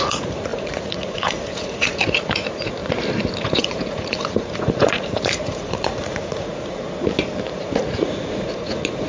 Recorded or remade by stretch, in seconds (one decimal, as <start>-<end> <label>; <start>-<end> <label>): 0.0-2.8 remade; 2.8-3.4 recorded; 3.4-6.8 remade; 6.8-7.5 recorded; 7.5-9.1 remade